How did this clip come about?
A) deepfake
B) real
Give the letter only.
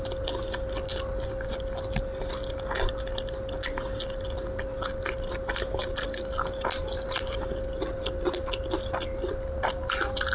B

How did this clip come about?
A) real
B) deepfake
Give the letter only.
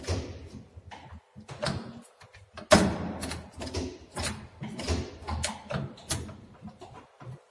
A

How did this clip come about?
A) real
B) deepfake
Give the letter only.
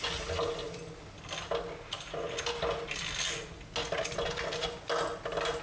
A